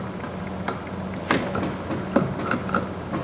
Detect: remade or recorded recorded